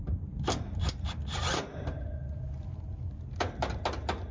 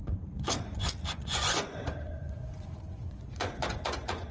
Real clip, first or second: first